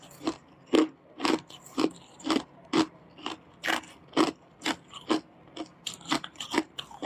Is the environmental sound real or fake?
real